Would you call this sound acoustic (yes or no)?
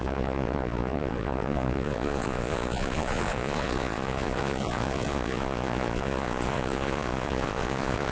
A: no